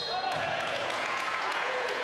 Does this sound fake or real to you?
fake